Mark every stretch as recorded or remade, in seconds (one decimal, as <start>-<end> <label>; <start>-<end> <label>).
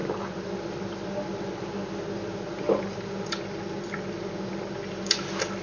0.0-5.6 recorded